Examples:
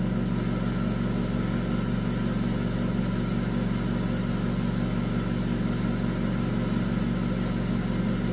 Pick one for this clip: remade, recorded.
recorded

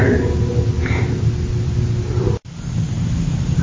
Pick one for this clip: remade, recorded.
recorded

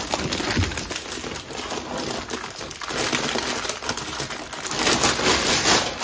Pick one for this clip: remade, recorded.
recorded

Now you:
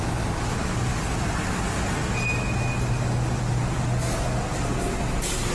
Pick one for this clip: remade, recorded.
recorded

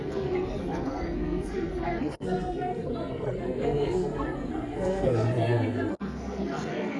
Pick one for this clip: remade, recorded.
remade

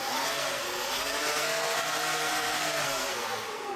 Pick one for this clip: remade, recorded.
remade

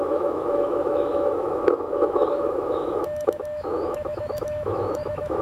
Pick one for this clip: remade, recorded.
remade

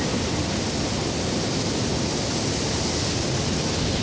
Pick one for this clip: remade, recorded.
recorded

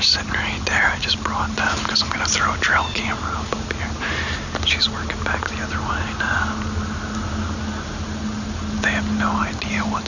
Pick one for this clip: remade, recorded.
recorded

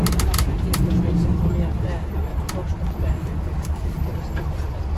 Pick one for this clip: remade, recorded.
recorded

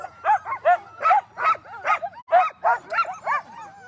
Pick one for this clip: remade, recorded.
recorded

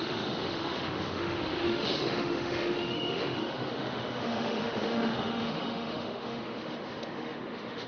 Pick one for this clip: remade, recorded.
remade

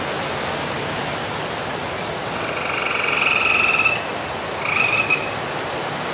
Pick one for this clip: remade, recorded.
recorded